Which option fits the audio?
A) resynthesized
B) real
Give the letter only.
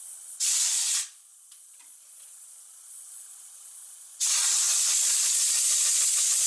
A